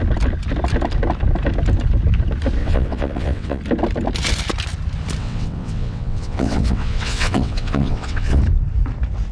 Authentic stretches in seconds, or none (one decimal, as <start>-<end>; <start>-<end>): 0.0-2.6; 3.6-5.2; 8.4-9.3